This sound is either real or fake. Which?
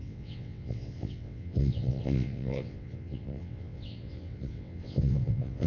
fake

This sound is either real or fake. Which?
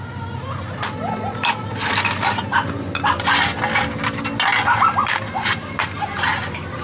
real